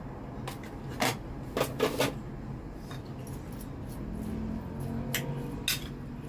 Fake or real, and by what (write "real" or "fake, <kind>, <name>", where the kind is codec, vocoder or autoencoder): real